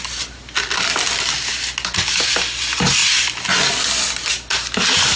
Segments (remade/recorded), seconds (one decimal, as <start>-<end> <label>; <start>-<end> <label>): 0.0-5.2 recorded